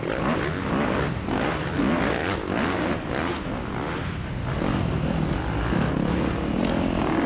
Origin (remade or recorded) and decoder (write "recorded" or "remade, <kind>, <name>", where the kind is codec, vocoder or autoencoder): recorded